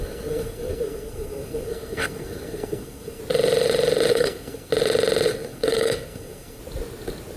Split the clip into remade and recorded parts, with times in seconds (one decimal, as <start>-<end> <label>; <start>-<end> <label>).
0.0-3.2 remade; 3.2-4.1 recorded; 4.1-4.7 remade; 4.7-5.3 recorded; 5.3-6.6 remade; 6.6-7.4 recorded